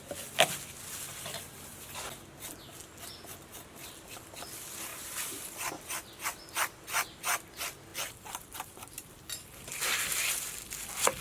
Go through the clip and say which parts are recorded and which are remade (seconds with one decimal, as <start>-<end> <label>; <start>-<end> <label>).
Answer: 0.0-4.9 recorded; 4.9-5.7 remade; 5.7-7.9 recorded; 7.9-9.1 remade; 9.1-11.2 recorded